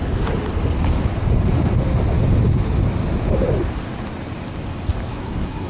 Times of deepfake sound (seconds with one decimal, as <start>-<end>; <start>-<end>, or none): 5.1-5.7